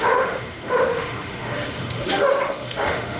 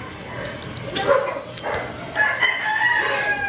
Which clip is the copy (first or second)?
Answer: first